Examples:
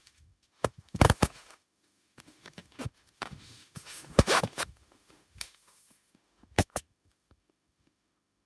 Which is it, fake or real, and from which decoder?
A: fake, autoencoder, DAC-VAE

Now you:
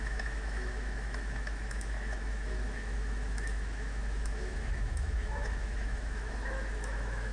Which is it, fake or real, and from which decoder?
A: fake, autoencoder, DAC-VAE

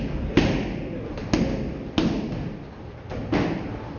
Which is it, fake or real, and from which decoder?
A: real